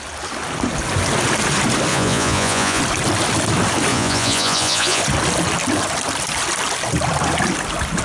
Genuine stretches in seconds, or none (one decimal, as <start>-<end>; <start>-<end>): 0.0-1.9; 2.8-3.9; 5.0-8.0